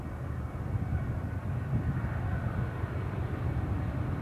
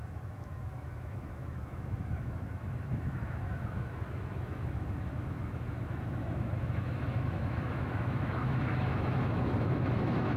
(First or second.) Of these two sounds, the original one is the first